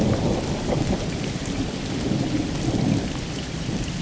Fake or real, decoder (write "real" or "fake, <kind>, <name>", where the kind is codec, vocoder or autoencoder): fake, vocoder, BigVGAN v2